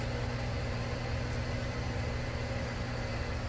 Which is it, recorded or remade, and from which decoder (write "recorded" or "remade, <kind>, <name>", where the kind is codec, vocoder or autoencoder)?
recorded